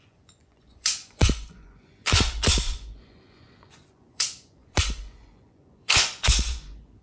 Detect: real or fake fake